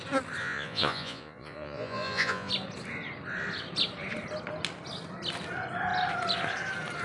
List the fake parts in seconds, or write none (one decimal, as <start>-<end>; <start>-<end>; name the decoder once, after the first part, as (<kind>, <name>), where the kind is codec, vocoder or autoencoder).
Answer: 0.4-2.5 (vocoder, Vocos)